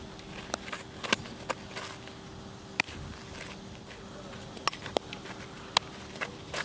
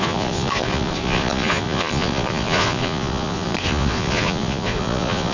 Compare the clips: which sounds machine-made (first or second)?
second